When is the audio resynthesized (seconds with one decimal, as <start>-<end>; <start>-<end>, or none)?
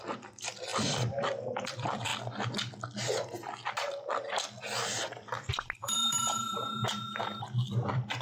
0.0-2.1; 5.5-6.8; 7.7-8.2